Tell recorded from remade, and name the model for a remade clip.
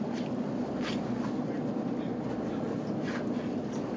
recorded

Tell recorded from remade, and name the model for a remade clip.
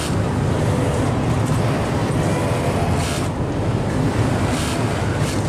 recorded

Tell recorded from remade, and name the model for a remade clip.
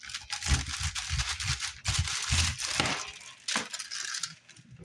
recorded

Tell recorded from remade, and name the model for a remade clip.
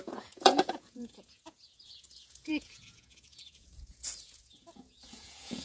remade, vocoder, Vocos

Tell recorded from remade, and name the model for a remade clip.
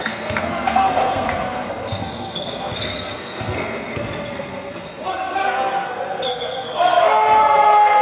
remade, codec, SNAC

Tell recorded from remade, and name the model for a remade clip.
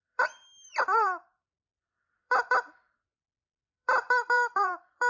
remade, vocoder, BigVGAN v2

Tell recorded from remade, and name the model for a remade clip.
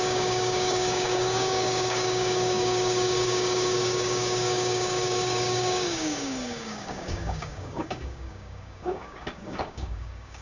remade, codec, DAC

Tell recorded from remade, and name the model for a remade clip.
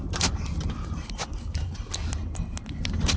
recorded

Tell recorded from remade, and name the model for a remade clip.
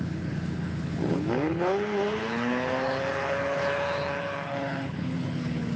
remade, codec, HILCodec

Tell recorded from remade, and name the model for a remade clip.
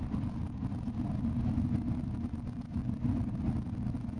recorded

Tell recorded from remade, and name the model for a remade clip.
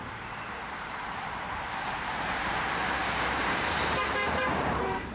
remade, vocoder, BigVGAN v2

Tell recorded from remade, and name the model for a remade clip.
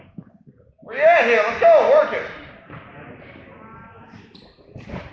recorded